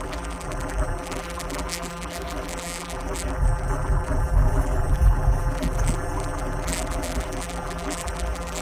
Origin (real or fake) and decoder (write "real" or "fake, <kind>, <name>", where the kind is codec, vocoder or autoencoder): fake, vocoder, BigVGAN v2